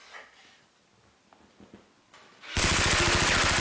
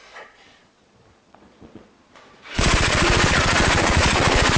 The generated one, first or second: second